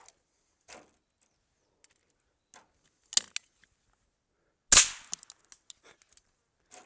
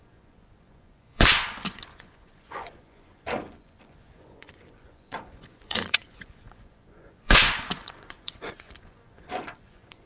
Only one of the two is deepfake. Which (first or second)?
second